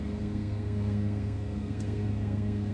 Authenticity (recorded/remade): remade